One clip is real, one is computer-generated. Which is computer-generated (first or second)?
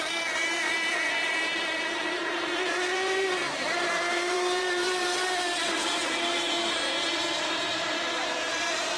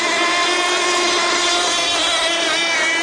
first